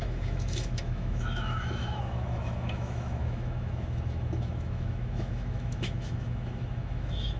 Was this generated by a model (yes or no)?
yes